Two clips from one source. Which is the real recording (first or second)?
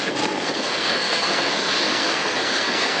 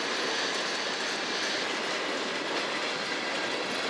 second